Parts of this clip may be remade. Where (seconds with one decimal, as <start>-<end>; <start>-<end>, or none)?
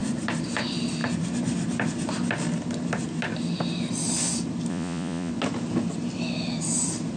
4.7-5.3